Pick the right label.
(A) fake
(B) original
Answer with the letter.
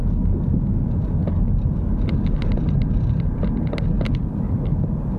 B